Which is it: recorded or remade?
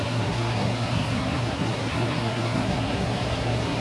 remade